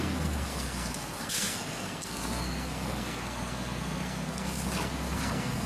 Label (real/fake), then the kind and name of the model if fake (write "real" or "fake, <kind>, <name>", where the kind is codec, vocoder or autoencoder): fake, codec, SNAC